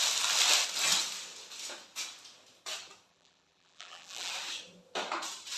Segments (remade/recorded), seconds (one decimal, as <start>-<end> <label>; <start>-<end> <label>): 0.0-3.1 recorded; 3.1-4.3 remade; 4.3-5.6 recorded